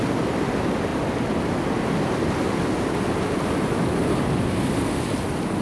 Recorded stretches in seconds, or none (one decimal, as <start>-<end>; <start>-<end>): 0.0-5.6

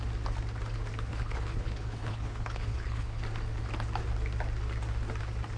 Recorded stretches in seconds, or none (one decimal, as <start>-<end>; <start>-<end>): 0.0-1.1; 3.2-5.6

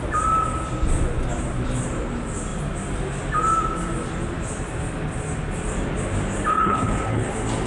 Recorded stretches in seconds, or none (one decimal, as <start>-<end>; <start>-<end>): 0.0-6.5; 7.3-7.7

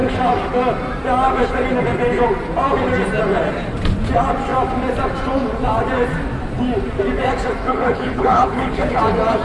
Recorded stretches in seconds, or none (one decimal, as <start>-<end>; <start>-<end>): 0.0-7.7; 9.0-9.4

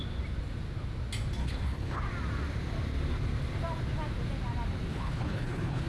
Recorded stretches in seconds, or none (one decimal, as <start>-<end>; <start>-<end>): 0.0-1.4; 2.0-4.9

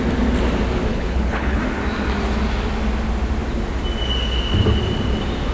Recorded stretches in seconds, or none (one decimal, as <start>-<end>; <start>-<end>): 0.0-0.9; 1.6-5.5